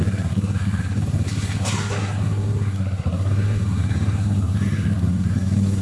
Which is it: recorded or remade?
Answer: remade